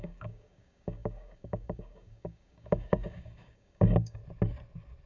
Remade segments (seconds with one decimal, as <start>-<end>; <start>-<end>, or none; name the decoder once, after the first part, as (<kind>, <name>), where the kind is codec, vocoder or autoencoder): 0.0-4.2 (codec, DAC)